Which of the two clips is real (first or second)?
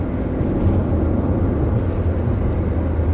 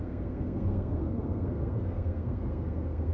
first